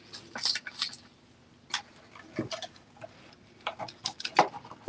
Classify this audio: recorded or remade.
recorded